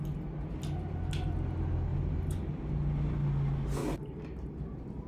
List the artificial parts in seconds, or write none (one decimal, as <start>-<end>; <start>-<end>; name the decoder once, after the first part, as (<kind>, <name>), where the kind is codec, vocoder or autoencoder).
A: 1.9-2.7 (vocoder, BigVGAN v2); 3.8-5.1